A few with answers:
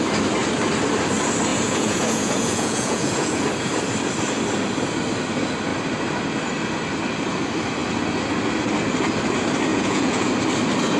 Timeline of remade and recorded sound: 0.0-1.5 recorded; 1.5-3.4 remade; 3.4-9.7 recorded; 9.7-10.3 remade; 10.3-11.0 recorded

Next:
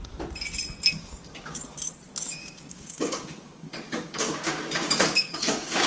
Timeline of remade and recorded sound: 0.0-0.9 recorded; 0.9-1.6 remade; 1.6-2.3 recorded; 2.3-5.9 remade

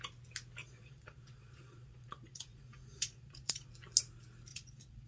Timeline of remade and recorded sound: 0.0-0.6 recorded; 0.6-3.7 remade; 3.7-4.5 recorded; 4.5-5.1 remade

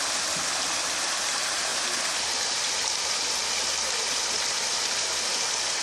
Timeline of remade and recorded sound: 0.0-5.8 recorded

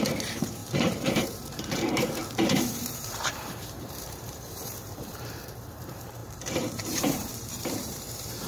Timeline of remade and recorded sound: 0.0-8.5 remade